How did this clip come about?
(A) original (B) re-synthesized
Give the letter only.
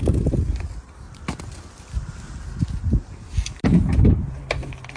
A